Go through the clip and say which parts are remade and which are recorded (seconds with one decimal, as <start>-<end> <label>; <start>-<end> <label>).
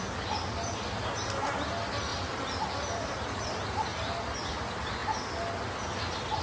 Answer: 0.0-6.4 recorded